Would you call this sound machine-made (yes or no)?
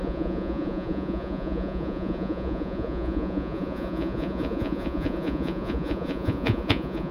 yes